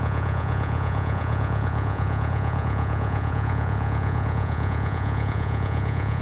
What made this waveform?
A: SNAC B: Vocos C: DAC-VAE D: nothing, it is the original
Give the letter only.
B